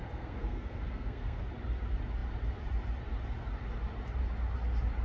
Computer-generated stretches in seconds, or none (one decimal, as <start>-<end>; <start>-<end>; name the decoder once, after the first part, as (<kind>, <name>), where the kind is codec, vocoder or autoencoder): 0.0-1.4 (codec, SNAC)